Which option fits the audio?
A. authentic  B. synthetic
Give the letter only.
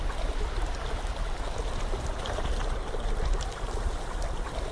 A